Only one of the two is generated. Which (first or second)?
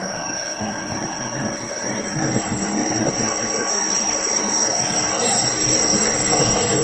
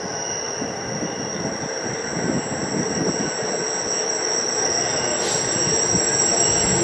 first